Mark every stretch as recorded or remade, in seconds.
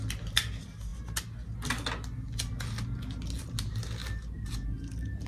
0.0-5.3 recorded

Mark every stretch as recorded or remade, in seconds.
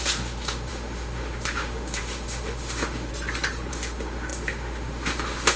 0.0-3.1 remade; 3.1-3.7 recorded; 3.7-5.6 remade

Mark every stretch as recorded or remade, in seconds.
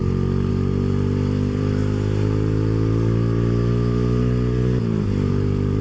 0.0-0.5 recorded; 0.5-1.8 remade; 1.8-5.3 recorded; 5.3-5.8 remade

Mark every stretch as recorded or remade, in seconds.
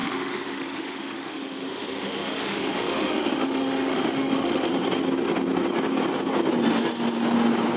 0.0-4.7 remade; 4.7-7.8 recorded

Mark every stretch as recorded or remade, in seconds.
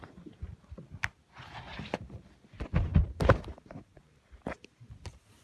0.0-5.4 recorded